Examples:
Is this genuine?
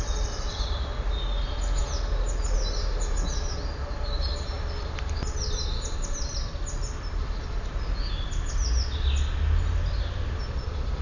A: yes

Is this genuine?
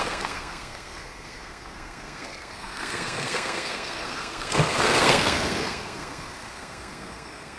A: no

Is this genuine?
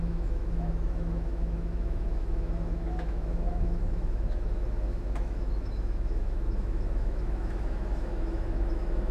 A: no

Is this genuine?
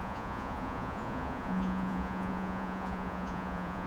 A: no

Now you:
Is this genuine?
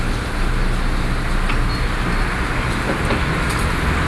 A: yes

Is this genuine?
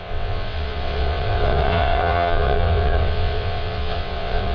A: no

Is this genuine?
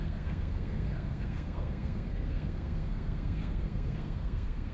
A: no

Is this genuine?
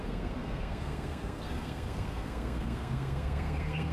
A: no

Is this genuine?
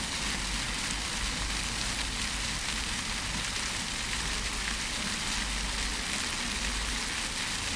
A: yes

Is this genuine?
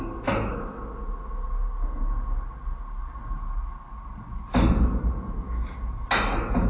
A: yes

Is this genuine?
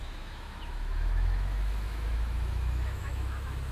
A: no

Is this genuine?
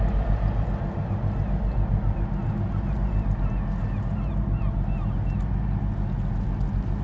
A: yes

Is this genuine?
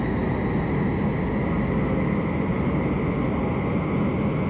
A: yes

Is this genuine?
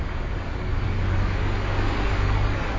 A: no